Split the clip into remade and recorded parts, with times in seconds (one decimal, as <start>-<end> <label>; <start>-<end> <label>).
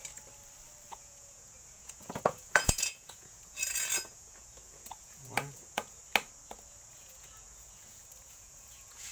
0.0-0.9 recorded; 0.9-6.0 remade; 6.0-6.9 recorded; 6.9-9.1 remade